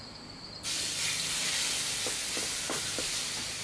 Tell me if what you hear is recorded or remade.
recorded